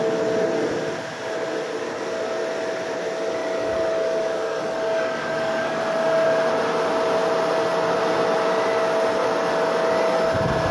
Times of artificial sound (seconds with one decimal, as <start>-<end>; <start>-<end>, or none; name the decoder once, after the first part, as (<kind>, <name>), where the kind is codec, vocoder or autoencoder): 3.4-5.8 (codec, DAC)